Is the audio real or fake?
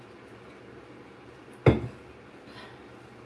real